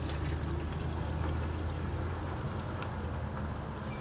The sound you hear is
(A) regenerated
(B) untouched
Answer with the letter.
B